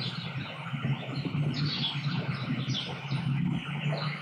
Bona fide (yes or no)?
no